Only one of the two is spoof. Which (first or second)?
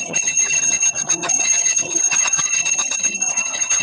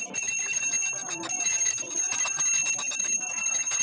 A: first